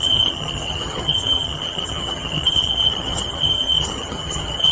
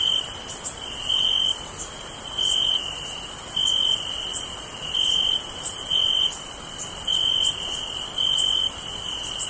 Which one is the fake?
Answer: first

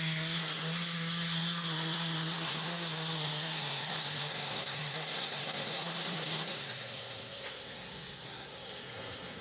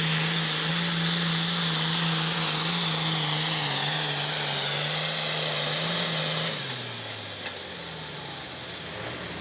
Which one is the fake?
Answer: first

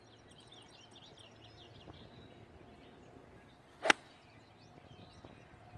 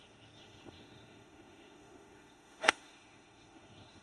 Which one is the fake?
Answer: second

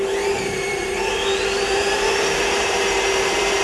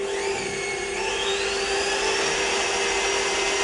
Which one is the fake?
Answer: first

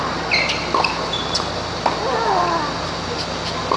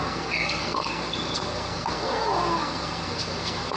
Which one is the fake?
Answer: second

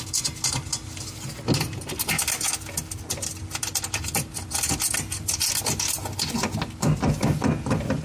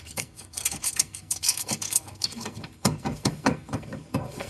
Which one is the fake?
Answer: second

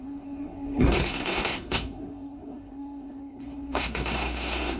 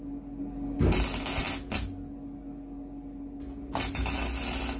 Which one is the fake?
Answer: first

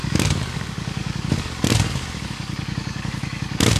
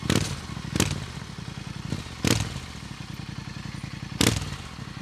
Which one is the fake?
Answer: first